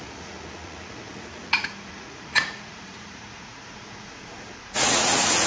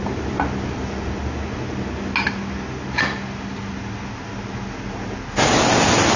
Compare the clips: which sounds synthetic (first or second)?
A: first